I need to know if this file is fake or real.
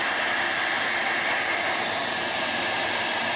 real